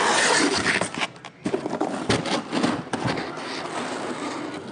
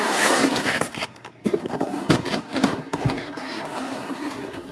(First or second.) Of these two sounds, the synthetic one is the second